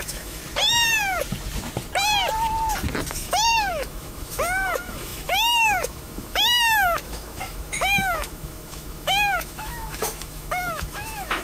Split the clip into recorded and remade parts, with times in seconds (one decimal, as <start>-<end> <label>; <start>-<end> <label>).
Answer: 0.0-0.4 remade; 0.4-3.1 recorded; 3.1-11.4 remade